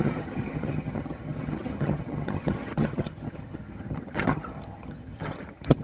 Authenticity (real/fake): fake